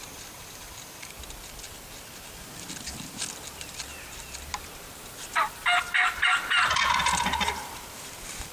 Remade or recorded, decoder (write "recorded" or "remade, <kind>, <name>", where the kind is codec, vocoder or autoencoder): recorded